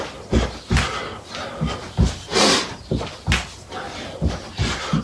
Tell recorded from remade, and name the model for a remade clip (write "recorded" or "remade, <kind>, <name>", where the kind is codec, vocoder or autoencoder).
recorded